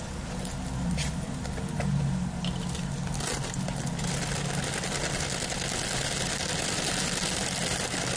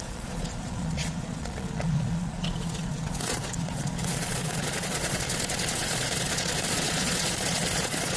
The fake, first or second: second